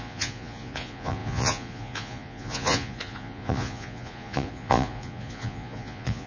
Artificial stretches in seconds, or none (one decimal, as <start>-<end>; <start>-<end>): 0.0-6.3